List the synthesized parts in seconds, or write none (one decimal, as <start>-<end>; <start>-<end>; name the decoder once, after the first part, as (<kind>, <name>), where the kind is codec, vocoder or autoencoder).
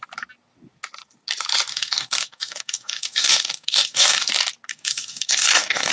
1.7-4.3 (codec, DAC); 4.7-5.9